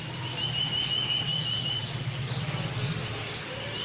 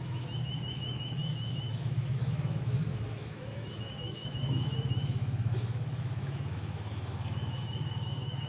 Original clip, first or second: first